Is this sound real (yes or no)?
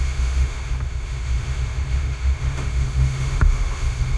no